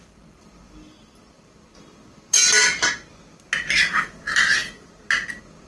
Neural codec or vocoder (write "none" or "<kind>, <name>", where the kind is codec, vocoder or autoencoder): none